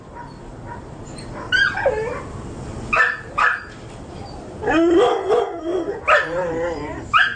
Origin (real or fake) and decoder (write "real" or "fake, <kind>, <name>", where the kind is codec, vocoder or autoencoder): real